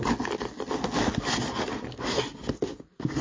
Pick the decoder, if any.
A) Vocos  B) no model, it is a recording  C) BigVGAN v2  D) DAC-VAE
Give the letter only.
B